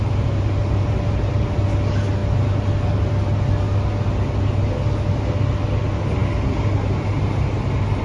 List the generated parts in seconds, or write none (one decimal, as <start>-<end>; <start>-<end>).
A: none